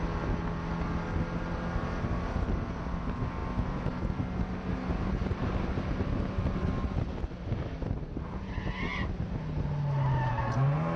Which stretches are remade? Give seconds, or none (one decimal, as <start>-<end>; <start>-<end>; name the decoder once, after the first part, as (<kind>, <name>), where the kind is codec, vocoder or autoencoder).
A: none